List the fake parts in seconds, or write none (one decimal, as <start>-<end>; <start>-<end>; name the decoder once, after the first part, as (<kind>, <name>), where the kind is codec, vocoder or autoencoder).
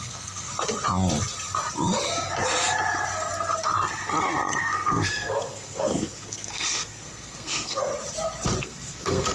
0.0-0.5 (codec, SNAC); 4.6-7.9; 8.6-9.3